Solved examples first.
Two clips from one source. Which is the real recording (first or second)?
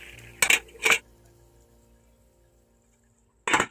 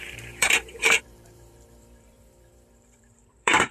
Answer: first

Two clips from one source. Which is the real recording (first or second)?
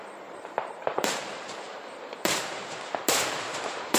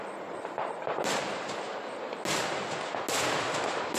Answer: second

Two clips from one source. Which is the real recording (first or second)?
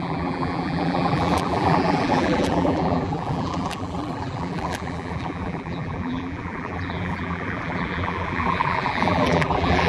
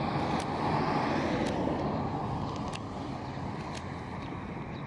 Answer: second